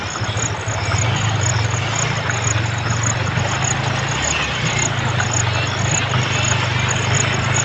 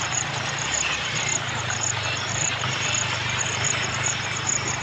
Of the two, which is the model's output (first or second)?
second